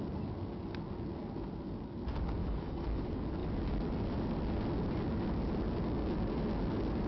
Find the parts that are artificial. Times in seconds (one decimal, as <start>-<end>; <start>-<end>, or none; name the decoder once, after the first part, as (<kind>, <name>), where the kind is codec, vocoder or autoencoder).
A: 2.4-3.0 (autoencoder, DAC-VAE)